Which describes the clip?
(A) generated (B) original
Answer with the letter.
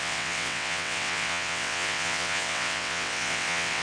A